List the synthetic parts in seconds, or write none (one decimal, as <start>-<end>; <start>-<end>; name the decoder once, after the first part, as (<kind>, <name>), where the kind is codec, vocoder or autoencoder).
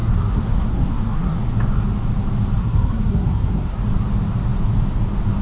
0.0-1.4 (codec, SNAC); 2.6-3.8